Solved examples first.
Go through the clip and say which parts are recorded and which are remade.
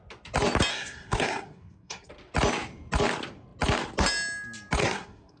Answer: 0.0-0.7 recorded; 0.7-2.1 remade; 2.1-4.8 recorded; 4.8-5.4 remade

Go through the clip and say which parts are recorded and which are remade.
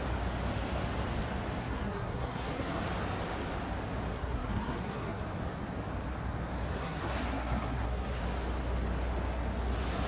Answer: 0.0-1.6 recorded; 1.6-2.8 remade; 2.8-4.1 recorded; 4.1-5.2 remade; 5.2-6.7 recorded; 6.7-8.2 remade; 8.2-10.1 recorded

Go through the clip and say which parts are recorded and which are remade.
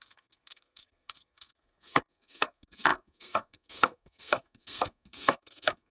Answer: 0.0-5.9 remade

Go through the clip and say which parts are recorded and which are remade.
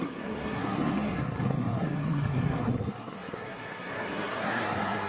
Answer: 0.0-5.1 remade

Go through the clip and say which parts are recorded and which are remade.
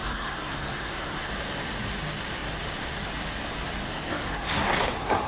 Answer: 0.0-1.3 remade; 1.3-3.9 recorded; 3.9-5.3 remade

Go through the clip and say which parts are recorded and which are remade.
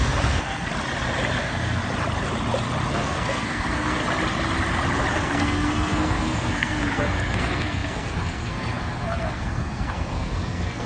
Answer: 0.0-0.7 remade; 0.7-1.4 recorded; 1.4-1.8 remade; 1.8-2.9 recorded; 2.9-4.0 remade; 4.0-5.1 recorded; 5.1-10.9 remade